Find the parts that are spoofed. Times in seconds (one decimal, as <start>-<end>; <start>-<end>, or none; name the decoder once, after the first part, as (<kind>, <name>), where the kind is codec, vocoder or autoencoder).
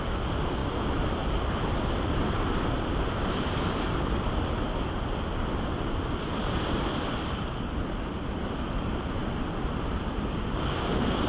none